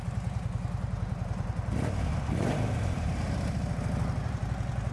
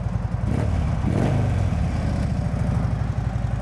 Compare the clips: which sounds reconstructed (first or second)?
first